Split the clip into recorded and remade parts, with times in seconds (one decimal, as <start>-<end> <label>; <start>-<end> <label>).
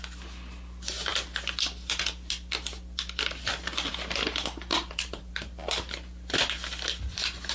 0.0-4.7 recorded; 4.7-5.3 remade; 5.3-7.5 recorded